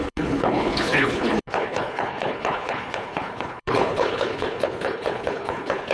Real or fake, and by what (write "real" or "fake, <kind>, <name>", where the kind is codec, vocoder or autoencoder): fake, codec, HILCodec